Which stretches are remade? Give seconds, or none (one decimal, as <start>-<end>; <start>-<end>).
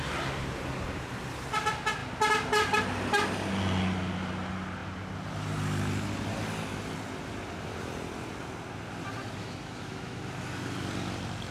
9.4-10.2